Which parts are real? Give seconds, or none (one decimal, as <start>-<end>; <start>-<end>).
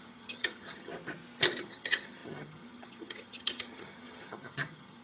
0.9-1.6